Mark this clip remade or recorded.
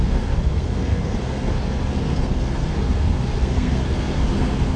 remade